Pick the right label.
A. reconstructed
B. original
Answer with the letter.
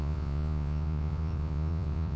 A